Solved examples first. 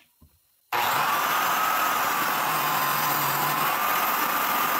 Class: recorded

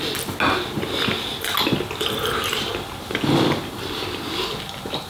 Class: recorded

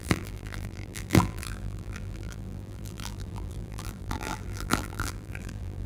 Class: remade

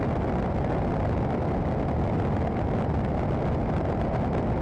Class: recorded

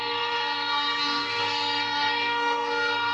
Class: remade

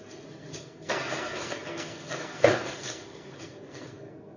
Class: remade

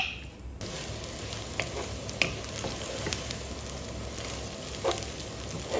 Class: recorded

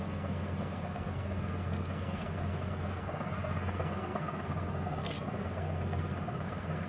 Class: remade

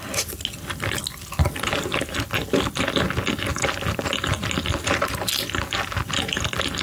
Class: recorded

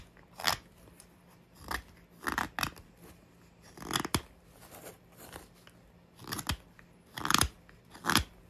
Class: recorded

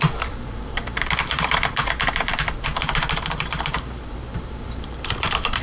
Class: remade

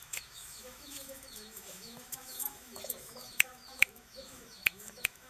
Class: remade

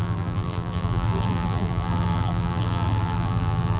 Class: remade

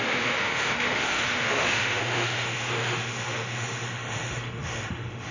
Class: remade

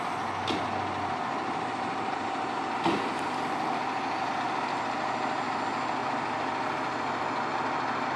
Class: recorded